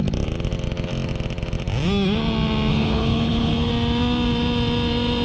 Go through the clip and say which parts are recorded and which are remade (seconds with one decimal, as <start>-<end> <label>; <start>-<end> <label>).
0.0-2.7 recorded; 2.7-3.7 remade; 3.7-5.2 recorded